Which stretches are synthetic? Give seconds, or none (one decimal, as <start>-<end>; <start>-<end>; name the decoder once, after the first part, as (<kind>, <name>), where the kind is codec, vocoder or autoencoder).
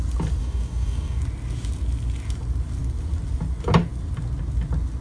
0.4-1.2 (codec, DAC)